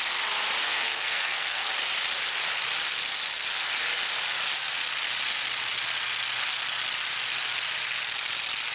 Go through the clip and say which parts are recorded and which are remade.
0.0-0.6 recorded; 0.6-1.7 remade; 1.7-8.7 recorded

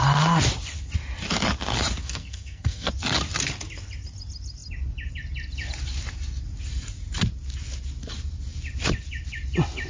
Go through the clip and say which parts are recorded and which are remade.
0.0-2.0 recorded; 2.0-2.9 remade; 2.9-9.9 recorded